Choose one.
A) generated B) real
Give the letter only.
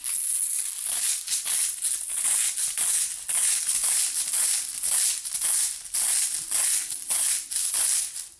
B